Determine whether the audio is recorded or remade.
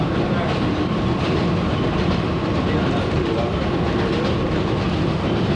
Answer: recorded